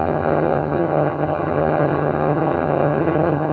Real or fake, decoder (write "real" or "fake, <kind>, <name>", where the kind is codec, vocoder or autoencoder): fake, vocoder, HiFi-GAN